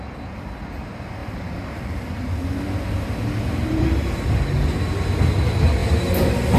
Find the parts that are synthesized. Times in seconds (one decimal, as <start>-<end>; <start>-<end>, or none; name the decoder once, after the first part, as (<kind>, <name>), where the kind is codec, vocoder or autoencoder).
1.2-4.2 (vocoder, BigVGAN v2)